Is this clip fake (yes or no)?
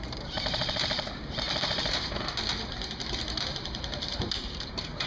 yes